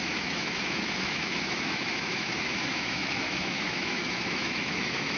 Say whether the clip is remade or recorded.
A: remade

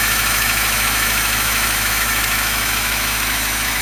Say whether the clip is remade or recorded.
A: remade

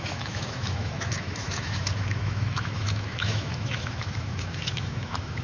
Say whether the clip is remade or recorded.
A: remade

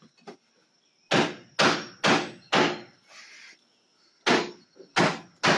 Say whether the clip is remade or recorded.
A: recorded